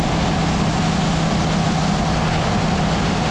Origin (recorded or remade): recorded